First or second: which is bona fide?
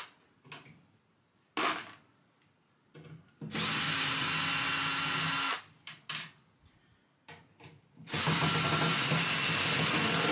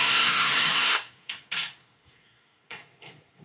first